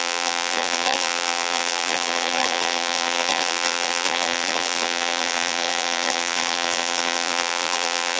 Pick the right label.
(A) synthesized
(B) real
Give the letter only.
A